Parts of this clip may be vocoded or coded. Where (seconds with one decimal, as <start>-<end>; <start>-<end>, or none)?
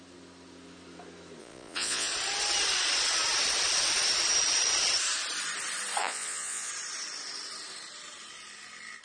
1.4-2.1; 6.0-6.7